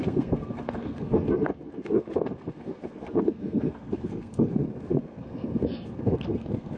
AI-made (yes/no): yes